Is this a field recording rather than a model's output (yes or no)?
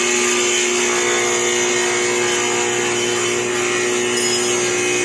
yes